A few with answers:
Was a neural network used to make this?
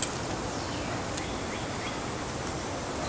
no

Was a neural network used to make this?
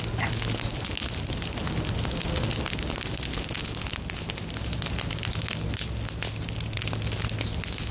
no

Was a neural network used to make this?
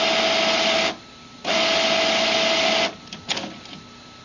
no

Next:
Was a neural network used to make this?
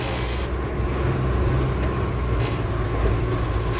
no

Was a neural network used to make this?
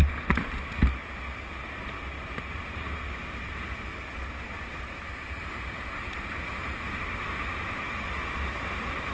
no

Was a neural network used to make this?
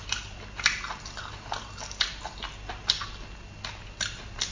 no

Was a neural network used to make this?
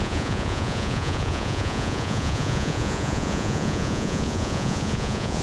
yes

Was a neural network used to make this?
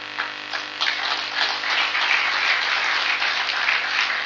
no